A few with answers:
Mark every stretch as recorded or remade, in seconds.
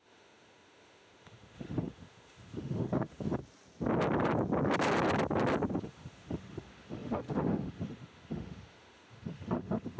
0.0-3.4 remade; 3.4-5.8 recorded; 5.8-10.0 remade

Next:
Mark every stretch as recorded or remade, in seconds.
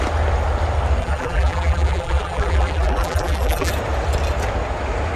0.0-1.0 recorded; 1.0-3.7 remade; 3.7-5.2 recorded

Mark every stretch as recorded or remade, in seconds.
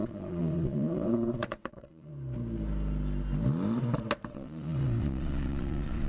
0.0-2.1 remade; 2.1-4.3 recorded; 4.3-6.1 remade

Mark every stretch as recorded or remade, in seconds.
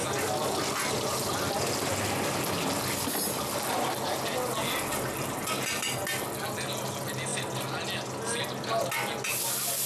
0.0-9.9 recorded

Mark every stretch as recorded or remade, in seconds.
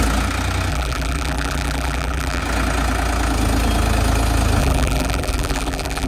0.0-0.7 recorded; 0.7-2.4 remade; 2.4-4.6 recorded; 4.6-6.1 remade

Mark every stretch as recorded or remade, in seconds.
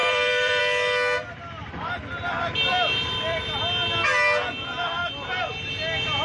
0.0-0.6 remade; 0.6-1.6 recorded; 1.6-3.6 remade; 3.6-5.0 recorded; 5.0-5.7 remade; 5.7-6.2 recorded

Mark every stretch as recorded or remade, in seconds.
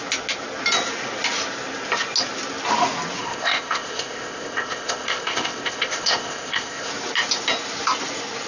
0.0-3.2 recorded; 3.2-6.9 remade; 6.9-8.5 recorded